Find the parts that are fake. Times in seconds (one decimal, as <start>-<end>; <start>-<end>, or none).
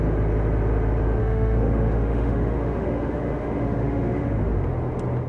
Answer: 1.2-4.4